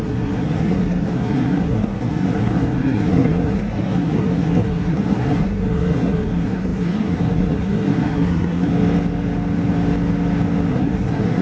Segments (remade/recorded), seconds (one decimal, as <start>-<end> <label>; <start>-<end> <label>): 0.0-8.7 remade; 8.7-10.7 recorded; 10.7-11.4 remade